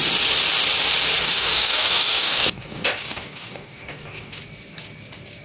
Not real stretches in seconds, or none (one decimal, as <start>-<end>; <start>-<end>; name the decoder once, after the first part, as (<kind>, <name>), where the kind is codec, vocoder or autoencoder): 1.2-4.4 (codec, DAC)